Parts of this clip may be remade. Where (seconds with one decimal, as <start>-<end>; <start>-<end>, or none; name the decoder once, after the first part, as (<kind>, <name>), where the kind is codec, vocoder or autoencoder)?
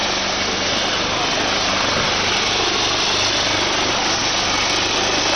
none